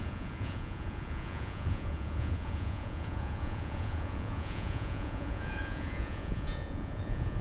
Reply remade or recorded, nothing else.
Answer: remade